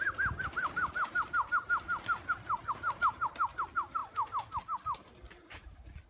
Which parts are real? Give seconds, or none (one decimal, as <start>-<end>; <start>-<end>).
0.0-6.1